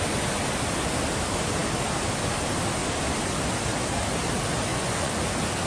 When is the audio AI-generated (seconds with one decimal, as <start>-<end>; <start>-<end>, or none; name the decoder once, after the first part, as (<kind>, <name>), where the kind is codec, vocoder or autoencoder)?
4.7-5.2 (vocoder, Vocos)